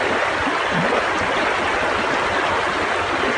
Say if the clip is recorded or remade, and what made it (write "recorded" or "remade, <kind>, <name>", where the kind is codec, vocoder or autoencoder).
recorded